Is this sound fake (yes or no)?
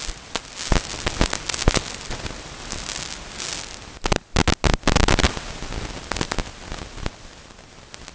no